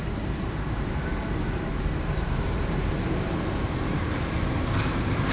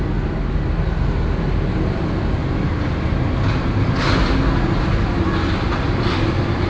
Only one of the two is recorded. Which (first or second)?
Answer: second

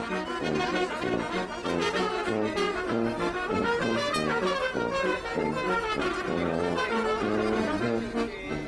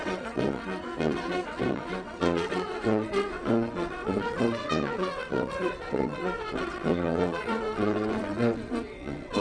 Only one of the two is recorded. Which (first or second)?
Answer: first